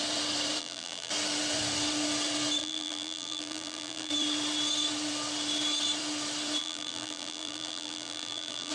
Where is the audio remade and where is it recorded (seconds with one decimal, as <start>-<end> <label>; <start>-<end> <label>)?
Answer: 0.0-0.6 recorded; 0.6-1.1 remade; 1.1-2.6 recorded; 2.6-4.1 remade; 4.1-6.6 recorded; 6.6-8.7 remade